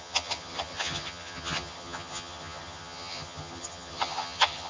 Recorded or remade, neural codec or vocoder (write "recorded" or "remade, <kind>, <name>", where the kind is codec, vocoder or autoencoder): remade, vocoder, HiFi-GAN